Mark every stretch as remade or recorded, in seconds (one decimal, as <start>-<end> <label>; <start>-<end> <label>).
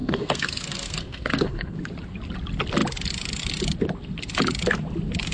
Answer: 0.0-1.8 remade; 1.8-5.3 recorded